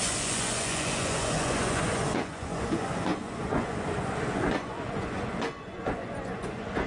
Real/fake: fake